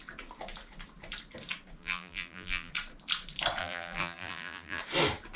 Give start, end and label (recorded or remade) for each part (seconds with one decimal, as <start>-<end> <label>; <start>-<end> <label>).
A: 0.0-1.8 recorded; 1.8-2.7 remade; 2.7-3.6 recorded; 3.6-4.8 remade; 4.8-5.4 recorded